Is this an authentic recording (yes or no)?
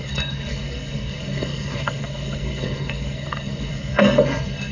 no